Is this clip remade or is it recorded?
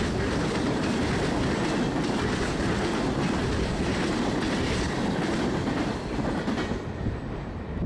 recorded